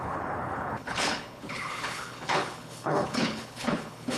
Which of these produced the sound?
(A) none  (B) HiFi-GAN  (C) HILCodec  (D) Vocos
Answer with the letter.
C